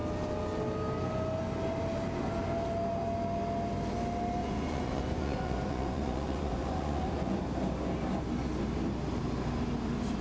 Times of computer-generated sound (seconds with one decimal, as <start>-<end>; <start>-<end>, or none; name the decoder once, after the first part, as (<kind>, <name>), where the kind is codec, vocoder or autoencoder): 4.4-7.4 (vocoder, Vocos)

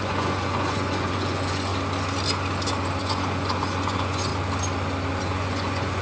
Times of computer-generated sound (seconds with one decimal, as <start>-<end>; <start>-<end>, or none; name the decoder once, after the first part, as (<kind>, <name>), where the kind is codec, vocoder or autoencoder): 0.0-1.7 (vocoder, Vocos); 3.0-4.3; 5.2-6.0

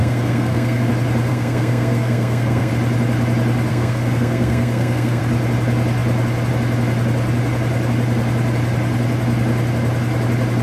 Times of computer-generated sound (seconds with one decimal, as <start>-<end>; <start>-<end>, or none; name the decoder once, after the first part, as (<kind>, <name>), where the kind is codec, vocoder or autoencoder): 0.0-0.9 (codec, SNAC); 1.3-2.7; 3.7-5.2

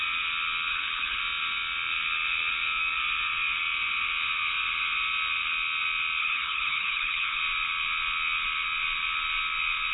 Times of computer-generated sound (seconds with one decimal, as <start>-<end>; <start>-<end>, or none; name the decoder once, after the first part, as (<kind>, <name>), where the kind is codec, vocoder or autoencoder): 0.7-1.2 (codec, HILCodec); 6.2-7.4